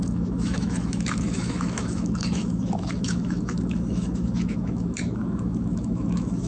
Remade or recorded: remade